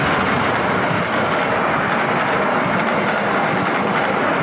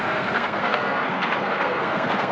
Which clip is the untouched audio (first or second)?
first